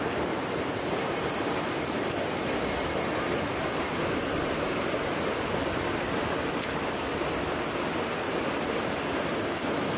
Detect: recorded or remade recorded